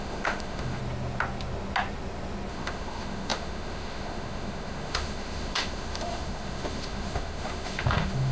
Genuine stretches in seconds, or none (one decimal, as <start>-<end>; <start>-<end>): 0.8-2.5

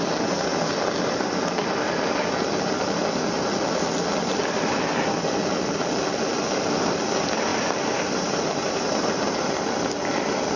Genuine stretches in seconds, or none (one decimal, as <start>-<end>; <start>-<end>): 0.0-7.5; 9.5-10.6

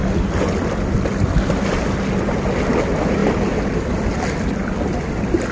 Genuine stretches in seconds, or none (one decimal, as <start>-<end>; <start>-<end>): 0.0-5.5